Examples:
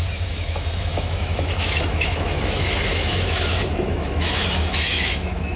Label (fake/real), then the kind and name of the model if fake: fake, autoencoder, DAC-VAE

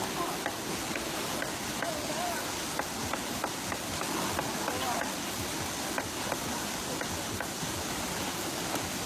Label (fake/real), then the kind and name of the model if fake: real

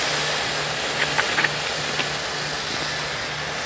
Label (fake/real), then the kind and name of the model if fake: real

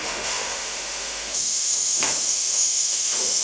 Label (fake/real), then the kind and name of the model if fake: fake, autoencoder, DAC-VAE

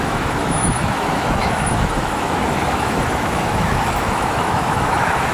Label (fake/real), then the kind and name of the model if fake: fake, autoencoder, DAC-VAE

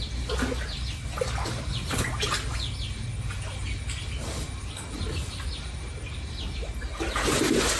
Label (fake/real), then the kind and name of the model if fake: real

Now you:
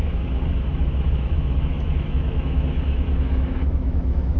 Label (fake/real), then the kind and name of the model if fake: fake, autoencoder, DAC-VAE